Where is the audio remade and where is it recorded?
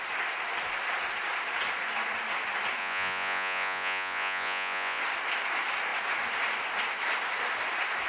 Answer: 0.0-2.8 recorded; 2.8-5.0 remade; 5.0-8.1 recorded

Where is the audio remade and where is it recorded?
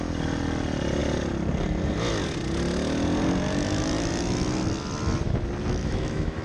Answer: 0.0-5.8 recorded; 5.8-6.4 remade